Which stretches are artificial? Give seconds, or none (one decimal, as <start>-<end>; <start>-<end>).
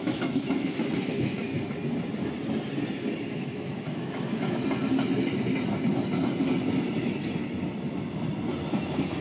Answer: 0.0-1.5; 3.3-4.6; 8.7-9.2